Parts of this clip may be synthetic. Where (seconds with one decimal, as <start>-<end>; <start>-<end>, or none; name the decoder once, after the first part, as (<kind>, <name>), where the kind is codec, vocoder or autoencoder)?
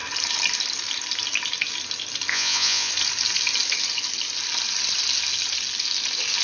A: 2.3-2.9 (vocoder, Vocos)